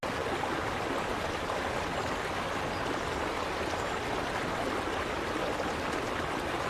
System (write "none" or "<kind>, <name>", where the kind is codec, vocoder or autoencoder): none